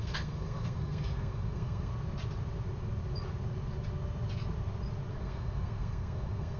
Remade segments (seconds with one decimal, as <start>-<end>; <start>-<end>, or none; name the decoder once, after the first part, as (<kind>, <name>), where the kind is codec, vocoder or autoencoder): 0.0-1.9 (codec, SNAC); 5.1-6.6